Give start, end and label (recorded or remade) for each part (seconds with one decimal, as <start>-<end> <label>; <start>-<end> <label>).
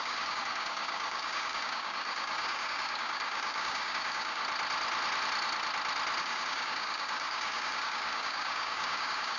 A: 0.0-4.4 remade; 4.4-6.2 recorded; 6.2-9.4 remade